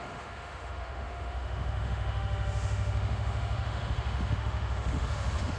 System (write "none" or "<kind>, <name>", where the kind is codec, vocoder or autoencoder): autoencoder, DAC-VAE